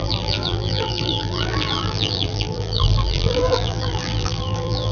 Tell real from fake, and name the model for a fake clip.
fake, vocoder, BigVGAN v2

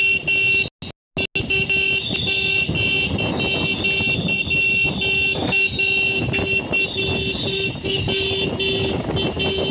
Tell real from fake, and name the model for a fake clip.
real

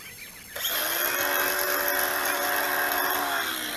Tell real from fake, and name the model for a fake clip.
real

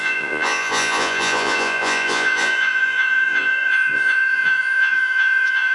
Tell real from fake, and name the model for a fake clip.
fake, vocoder, Vocos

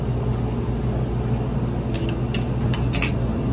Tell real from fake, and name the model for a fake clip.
real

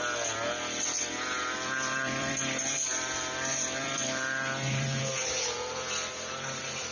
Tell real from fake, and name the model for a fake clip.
fake, vocoder, BigVGAN v2